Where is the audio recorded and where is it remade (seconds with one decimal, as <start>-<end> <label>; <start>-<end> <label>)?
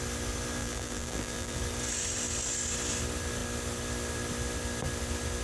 0.0-0.6 recorded; 0.6-1.6 remade; 1.6-5.4 recorded